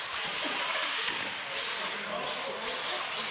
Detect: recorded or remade recorded